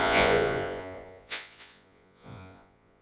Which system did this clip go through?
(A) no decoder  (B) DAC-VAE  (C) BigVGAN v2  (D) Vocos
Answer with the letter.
D